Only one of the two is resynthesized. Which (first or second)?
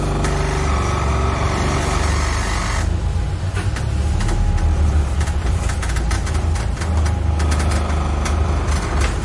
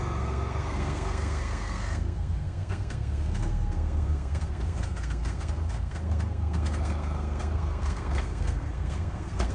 second